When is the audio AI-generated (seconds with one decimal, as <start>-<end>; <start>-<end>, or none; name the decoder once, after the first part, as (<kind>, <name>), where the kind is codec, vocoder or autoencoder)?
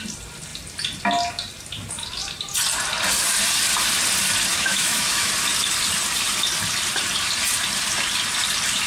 4.5-5.3 (autoencoder, DAC-VAE)